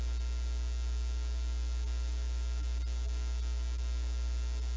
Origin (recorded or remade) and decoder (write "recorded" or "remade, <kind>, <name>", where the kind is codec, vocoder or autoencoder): recorded